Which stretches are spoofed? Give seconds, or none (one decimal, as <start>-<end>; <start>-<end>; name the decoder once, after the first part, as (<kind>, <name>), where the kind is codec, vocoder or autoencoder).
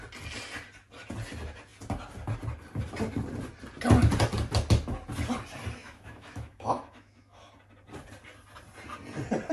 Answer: 5.8-7.5 (autoencoder, DAC-VAE)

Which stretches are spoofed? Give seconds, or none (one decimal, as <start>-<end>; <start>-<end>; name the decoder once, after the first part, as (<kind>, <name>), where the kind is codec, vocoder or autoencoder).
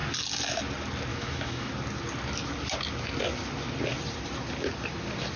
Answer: 1.1-1.7 (autoencoder, DAC-VAE)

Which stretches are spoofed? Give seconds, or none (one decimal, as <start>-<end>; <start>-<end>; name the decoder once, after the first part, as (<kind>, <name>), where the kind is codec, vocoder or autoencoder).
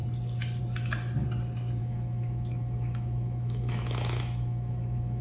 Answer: 1.8-5.2 (autoencoder, DAC-VAE)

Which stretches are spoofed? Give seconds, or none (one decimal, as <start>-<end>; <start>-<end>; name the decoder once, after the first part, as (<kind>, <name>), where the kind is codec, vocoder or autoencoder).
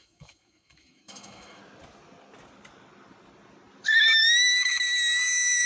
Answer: 0.0-1.6 (autoencoder, DAC-VAE); 4.2-5.7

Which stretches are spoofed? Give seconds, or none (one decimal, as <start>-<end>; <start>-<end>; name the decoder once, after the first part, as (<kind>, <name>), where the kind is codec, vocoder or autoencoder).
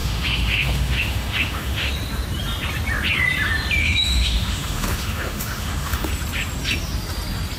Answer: 0.0-1.9 (autoencoder, DAC-VAE); 3.8-6.1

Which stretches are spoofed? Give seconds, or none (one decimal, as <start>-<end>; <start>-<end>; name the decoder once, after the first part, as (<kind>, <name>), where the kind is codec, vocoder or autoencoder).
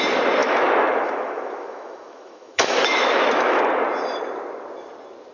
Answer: 0.4-3.6 (autoencoder, DAC-VAE)